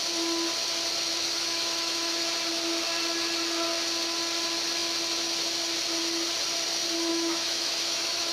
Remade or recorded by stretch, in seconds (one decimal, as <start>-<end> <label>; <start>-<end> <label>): 0.0-1.1 recorded; 1.1-2.2 remade; 2.2-7.1 recorded; 7.1-8.3 remade